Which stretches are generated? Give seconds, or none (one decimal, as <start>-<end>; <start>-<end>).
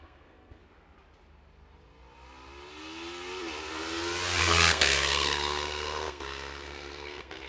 0.0-0.6; 4.4-7.5